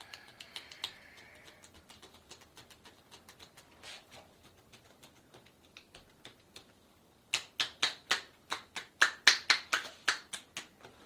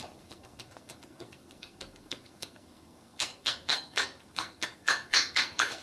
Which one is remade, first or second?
second